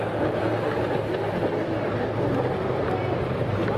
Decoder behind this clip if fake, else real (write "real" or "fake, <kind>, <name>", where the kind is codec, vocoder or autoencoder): real